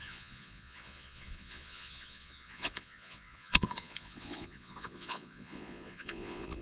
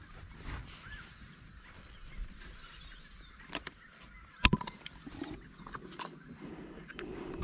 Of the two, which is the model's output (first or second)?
first